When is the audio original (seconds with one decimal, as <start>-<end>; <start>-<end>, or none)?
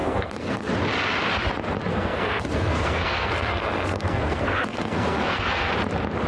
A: 0.7-1.9; 5.7-6.3